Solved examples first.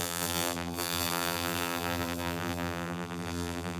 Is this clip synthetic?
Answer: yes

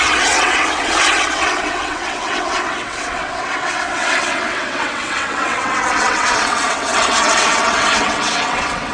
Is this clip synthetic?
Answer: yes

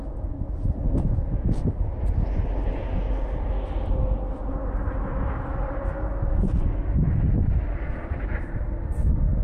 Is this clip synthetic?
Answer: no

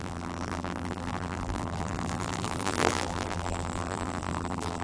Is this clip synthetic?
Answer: yes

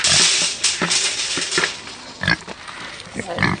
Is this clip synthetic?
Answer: no